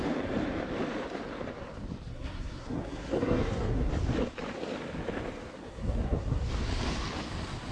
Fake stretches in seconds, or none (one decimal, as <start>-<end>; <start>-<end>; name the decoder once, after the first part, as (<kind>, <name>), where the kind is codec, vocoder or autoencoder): 2.1-3.9 (codec, SNAC); 5.6-6.4